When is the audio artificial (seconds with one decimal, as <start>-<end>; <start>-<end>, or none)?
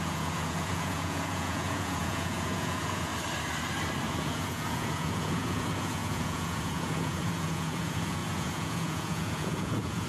0.0-3.1; 4.1-10.1